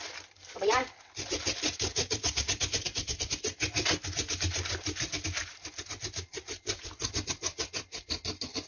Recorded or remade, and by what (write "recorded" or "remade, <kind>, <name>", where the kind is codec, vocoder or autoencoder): recorded